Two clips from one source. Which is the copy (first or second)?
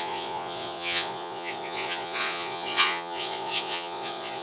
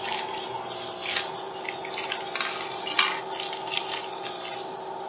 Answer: first